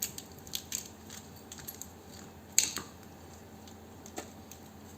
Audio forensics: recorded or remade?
recorded